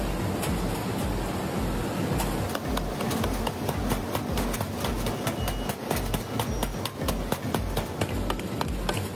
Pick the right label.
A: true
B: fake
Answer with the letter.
A